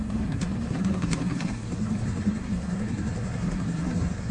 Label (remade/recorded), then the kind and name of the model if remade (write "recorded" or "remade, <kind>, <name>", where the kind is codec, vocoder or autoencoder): remade, codec, SNAC